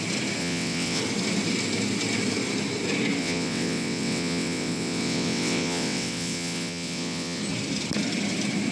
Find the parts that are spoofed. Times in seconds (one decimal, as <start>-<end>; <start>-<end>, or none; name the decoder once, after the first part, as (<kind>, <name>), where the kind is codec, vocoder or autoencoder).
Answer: 0.4-1.0 (vocoder, WaveNeXt); 3.2-7.4